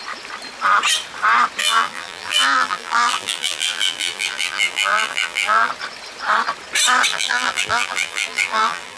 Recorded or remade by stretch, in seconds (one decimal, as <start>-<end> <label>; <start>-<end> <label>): 0.0-1.6 recorded; 1.6-5.7 remade; 5.7-7.1 recorded; 7.1-9.0 remade